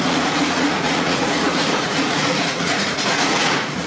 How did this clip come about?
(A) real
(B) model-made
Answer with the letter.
B